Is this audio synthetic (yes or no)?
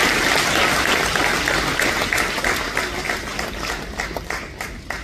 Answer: no